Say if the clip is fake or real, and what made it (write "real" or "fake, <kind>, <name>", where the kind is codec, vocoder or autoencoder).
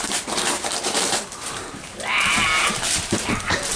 fake, vocoder, BigVGAN v2